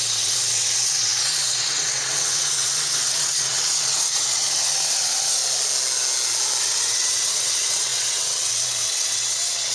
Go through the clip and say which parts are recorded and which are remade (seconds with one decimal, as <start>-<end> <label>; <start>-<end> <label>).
0.0-5.4 remade; 5.4-6.6 recorded; 6.6-9.7 remade